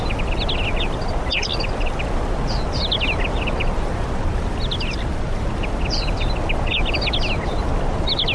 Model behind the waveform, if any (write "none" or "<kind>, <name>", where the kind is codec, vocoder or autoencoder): none